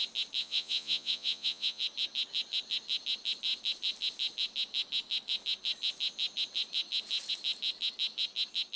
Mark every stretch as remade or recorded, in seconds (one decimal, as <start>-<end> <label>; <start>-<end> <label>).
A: 0.0-0.4 recorded; 0.4-1.8 remade; 1.8-8.8 recorded